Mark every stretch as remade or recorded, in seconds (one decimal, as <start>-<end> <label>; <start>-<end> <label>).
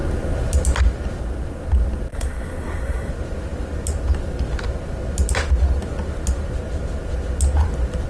0.0-2.1 recorded; 2.1-3.1 remade; 3.1-8.1 recorded